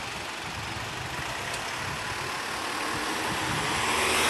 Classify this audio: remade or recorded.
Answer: recorded